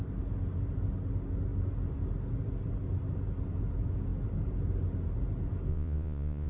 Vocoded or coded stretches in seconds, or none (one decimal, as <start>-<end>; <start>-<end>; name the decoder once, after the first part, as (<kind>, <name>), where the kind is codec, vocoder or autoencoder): 5.7-6.5 (vocoder, Vocos)